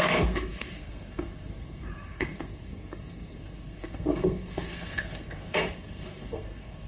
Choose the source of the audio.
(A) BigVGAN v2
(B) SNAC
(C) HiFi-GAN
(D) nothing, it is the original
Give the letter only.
B